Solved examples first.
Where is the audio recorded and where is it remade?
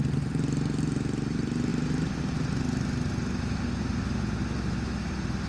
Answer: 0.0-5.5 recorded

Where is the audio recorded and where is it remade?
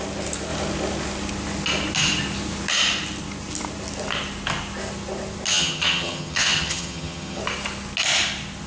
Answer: 0.0-5.5 recorded; 5.5-7.4 remade; 7.4-8.7 recorded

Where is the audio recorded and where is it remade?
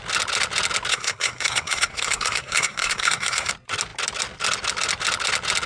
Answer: 0.0-0.9 recorded; 0.9-3.5 remade; 3.5-5.7 recorded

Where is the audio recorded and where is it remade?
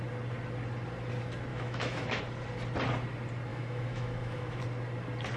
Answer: 0.0-1.5 recorded; 1.5-2.2 remade; 2.2-3.5 recorded; 3.5-4.6 remade; 4.6-5.4 recorded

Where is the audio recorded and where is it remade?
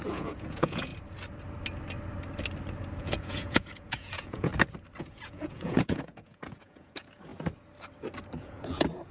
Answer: 0.0-0.9 remade; 0.9-3.0 recorded; 3.0-4.5 remade; 4.5-5.0 recorded; 5.0-7.3 remade; 7.3-8.4 recorded; 8.4-9.1 remade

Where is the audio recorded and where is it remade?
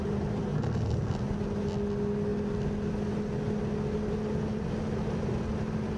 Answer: 0.0-6.0 recorded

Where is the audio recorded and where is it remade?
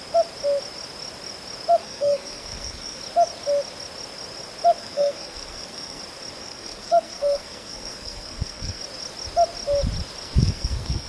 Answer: 0.0-1.8 recorded; 1.8-3.0 remade; 3.0-4.8 recorded; 4.8-6.0 remade; 6.0-6.4 recorded; 6.4-8.8 remade; 8.8-10.2 recorded; 10.2-11.1 remade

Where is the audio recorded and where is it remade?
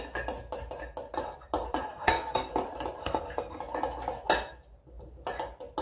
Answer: 0.0-1.9 recorded; 1.9-2.5 remade; 2.5-3.0 recorded; 3.0-3.6 remade; 3.6-5.8 recorded